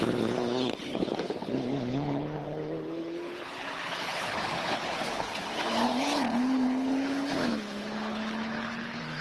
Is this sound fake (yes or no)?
yes